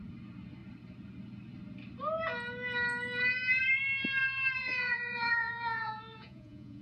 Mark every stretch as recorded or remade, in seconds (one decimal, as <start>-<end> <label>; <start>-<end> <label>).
0.0-4.6 recorded; 4.6-6.8 remade

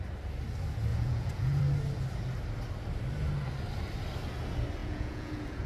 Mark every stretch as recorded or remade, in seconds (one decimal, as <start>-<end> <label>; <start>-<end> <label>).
0.0-0.9 recorded; 0.9-1.6 remade; 1.6-4.8 recorded; 4.8-5.7 remade

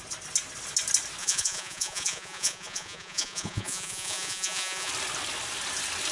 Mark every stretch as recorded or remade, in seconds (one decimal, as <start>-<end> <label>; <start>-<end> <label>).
0.0-1.2 recorded; 1.2-4.9 remade; 4.9-6.1 recorded

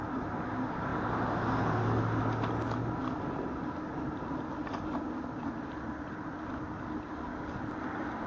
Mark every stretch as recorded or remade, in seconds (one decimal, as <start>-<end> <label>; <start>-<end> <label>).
0.0-8.3 recorded